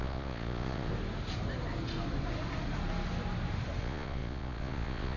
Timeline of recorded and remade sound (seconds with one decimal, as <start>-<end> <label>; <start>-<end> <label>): 0.0-0.9 remade; 0.9-3.8 recorded; 3.8-5.2 remade